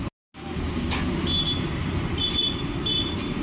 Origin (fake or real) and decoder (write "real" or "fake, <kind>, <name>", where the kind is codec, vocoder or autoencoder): real